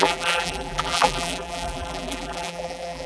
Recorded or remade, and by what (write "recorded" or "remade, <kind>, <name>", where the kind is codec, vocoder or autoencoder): remade, vocoder, BigVGAN v2